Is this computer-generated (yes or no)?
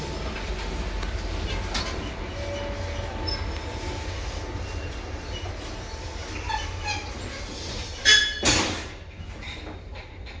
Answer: no